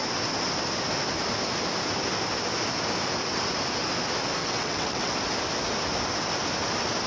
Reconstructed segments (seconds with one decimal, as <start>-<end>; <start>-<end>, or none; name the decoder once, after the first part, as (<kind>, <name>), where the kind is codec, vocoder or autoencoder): 4.4-5.1 (vocoder, WaveNeXt)